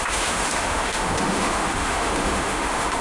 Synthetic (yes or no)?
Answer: yes